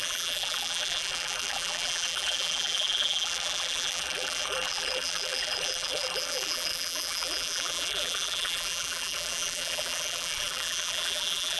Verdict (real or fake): fake